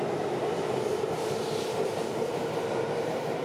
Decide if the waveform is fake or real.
real